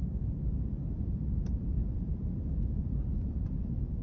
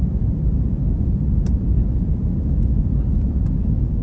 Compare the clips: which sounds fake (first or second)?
first